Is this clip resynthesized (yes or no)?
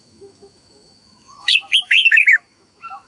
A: yes